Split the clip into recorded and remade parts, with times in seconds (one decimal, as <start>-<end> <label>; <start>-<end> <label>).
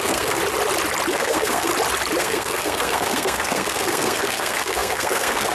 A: 0.0-0.4 remade; 0.4-1.1 recorded; 1.1-1.7 remade; 1.7-2.2 recorded; 2.2-5.5 remade